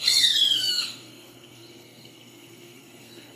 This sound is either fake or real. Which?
fake